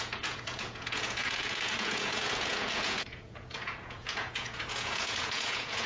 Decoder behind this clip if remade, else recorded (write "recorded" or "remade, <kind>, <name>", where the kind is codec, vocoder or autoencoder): remade, vocoder, Vocos